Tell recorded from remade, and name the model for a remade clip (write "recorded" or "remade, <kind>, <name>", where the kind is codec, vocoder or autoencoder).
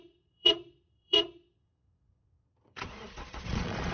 remade, vocoder, Vocos